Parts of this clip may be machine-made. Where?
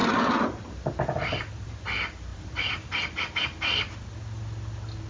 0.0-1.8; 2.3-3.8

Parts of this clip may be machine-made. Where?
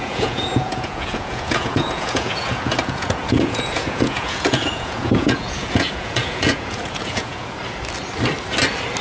0.0-7.6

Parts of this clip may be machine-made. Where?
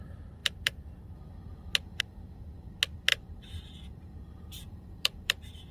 3.1-5.7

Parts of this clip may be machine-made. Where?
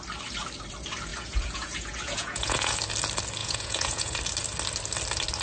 1.1-2.8; 3.4-4.2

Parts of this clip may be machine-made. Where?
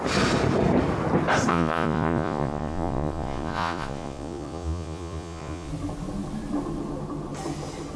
1.5-5.7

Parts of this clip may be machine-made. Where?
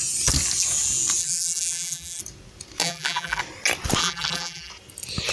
1.2-2.2; 2.8-3.4; 4.0-4.7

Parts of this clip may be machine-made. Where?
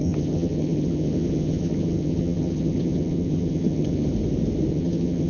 0.0-4.1; 4.7-5.3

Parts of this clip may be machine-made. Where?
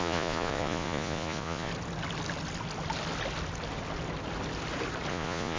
0.0-1.7; 5.1-5.6